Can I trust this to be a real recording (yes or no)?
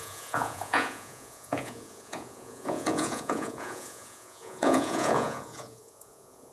no